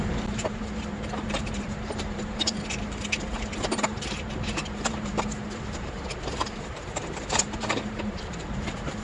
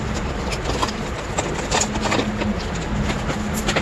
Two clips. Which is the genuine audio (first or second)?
second